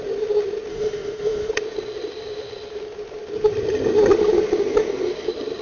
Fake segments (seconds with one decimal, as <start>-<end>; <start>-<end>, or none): 0.7-1.5